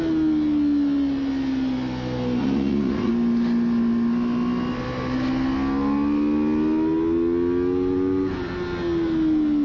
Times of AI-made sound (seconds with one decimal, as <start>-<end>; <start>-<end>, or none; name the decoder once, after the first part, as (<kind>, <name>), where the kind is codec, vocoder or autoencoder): 2.4-3.1 (vocoder, Vocos)